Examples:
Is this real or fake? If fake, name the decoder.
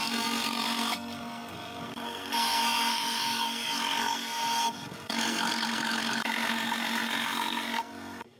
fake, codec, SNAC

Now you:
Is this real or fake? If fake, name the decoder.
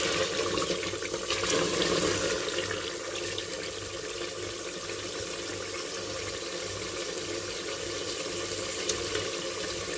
real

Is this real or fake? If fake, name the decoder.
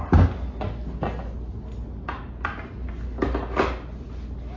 real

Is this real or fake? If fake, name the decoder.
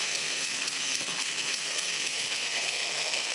fake, codec, SNAC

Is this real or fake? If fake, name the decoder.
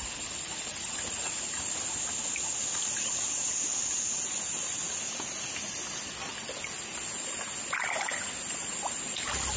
real